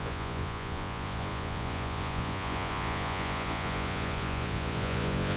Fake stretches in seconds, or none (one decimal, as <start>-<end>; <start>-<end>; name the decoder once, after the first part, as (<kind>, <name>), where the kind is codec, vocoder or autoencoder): 0.0-5.4 (vocoder, Vocos)